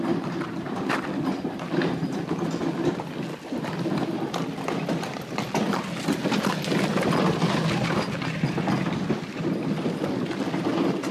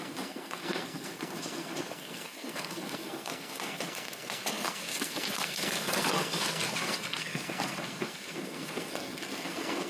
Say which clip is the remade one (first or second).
second